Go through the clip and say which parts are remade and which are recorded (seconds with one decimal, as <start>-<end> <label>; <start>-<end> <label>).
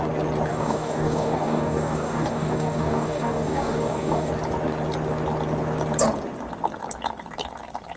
0.0-0.5 recorded; 0.5-4.3 remade; 4.3-8.0 recorded